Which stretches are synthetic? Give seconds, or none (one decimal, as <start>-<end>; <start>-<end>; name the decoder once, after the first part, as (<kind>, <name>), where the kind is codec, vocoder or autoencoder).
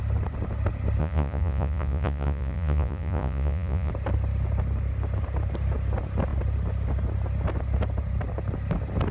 1.0-3.9 (vocoder, Vocos)